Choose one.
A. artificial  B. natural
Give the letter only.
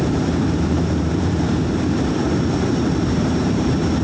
A